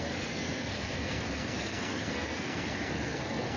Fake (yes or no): yes